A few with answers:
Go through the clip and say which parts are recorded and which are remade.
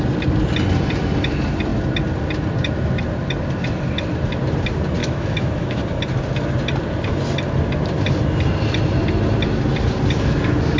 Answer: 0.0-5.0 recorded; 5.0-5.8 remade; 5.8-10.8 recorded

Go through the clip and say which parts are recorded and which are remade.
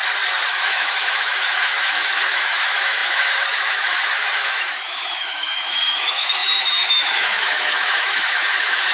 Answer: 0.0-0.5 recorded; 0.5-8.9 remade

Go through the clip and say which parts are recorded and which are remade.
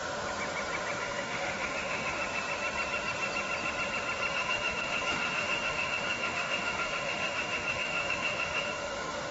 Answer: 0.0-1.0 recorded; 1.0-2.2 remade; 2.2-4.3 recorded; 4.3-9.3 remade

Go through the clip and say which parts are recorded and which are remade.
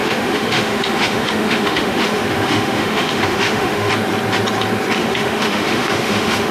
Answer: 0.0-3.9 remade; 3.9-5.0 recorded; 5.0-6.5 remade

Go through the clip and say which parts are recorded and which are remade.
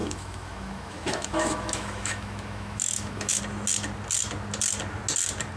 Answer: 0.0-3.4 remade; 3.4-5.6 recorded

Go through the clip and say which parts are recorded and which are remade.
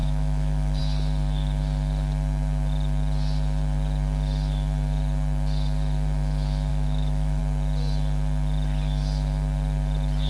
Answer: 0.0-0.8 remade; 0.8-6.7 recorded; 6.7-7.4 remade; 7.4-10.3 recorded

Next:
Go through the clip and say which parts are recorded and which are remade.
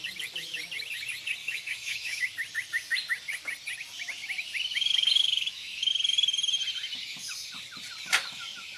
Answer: 0.0-1.4 recorded; 1.4-2.2 remade; 2.2-4.7 recorded; 4.7-5.9 remade; 5.9-8.8 recorded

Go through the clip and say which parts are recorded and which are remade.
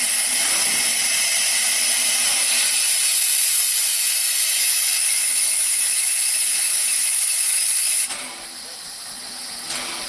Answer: 0.0-3.9 recorded; 3.9-8.1 remade; 8.1-10.1 recorded